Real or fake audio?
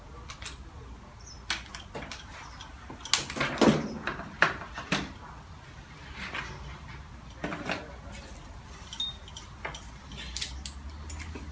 real